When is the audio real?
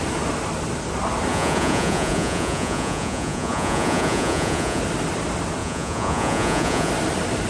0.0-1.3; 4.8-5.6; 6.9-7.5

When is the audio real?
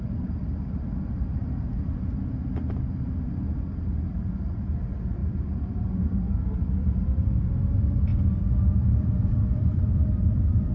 none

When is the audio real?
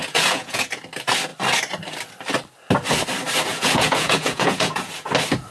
0.7-3.5; 4.9-5.5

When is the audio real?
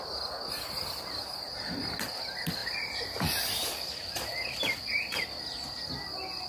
0.0-2.6; 3.3-6.5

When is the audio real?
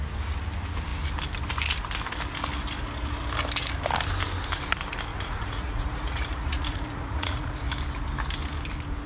0.0-5.1; 7.7-9.1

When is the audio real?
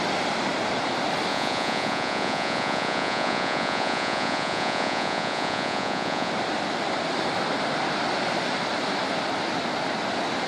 0.0-1.3; 6.3-10.5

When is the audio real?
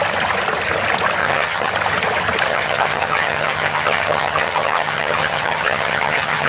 0.0-1.2; 1.7-2.5